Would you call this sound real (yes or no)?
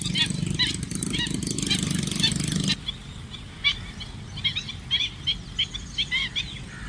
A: yes